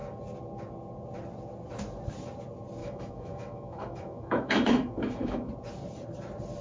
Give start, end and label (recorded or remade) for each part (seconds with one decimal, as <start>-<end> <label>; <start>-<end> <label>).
0.0-2.8 recorded; 2.8-5.5 remade; 5.5-6.6 recorded